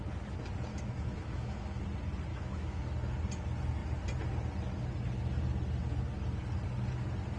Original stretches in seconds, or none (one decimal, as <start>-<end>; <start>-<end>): 0.0-0.7; 1.8-2.3; 2.9-7.4